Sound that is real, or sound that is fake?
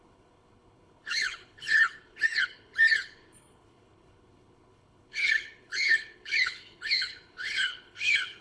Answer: fake